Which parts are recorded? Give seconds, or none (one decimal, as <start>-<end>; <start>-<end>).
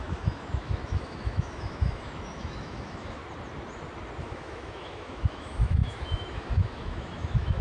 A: 3.2-4.2